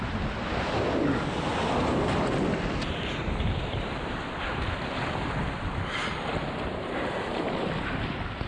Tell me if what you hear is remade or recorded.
recorded